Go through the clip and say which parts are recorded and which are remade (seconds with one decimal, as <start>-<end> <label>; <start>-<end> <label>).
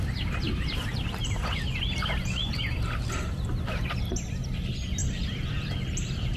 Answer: 0.0-5.0 recorded; 5.0-6.4 remade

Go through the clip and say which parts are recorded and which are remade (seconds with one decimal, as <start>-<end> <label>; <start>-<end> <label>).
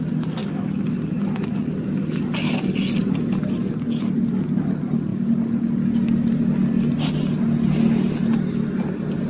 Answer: 0.0-9.3 recorded